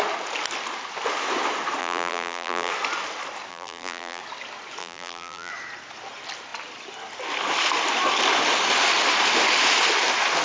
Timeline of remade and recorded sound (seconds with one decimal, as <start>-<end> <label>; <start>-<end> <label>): 0.0-1.8 recorded; 1.8-2.7 remade; 2.7-3.5 recorded; 3.5-4.2 remade; 4.2-4.8 recorded; 4.8-5.5 remade; 5.5-10.4 recorded